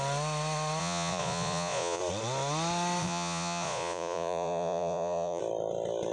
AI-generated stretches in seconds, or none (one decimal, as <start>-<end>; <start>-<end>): 0.8-2.0; 3.0-5.4